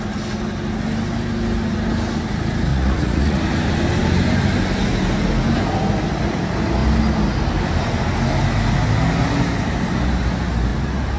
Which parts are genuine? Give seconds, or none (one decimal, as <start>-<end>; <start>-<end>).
0.0-2.7; 3.4-11.2